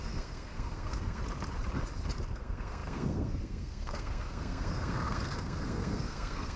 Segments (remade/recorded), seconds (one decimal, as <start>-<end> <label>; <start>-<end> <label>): 0.0-1.2 remade; 1.2-2.3 recorded; 2.3-6.6 remade